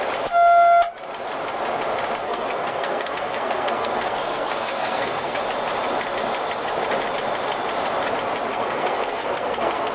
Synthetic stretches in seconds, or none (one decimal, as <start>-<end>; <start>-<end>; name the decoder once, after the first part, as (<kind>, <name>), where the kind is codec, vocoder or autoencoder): 2.2-5.4 (codec, SNAC); 8.5-9.9